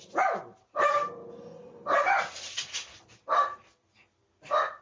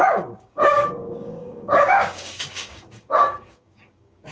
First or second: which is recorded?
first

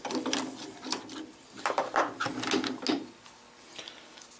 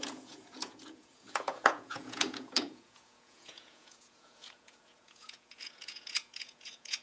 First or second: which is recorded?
first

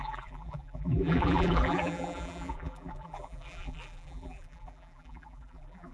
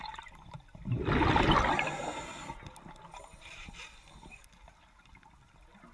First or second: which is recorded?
second